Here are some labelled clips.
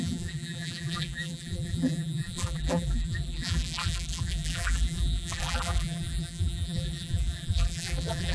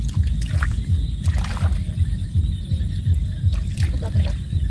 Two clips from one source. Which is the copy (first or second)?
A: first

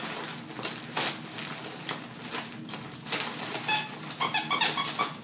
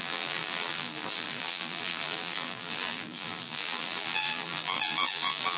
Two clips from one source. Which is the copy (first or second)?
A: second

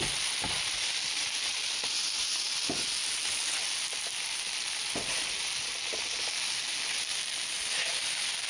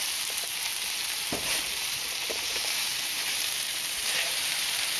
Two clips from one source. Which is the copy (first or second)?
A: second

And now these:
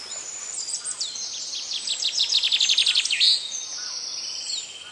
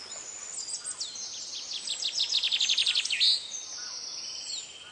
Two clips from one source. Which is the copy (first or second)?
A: first